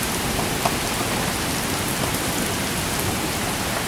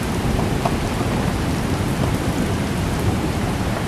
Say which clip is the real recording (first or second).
first